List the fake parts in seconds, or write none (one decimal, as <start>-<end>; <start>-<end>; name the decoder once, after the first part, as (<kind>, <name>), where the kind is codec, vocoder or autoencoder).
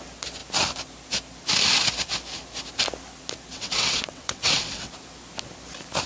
3.5-4.9 (vocoder, WaveNeXt)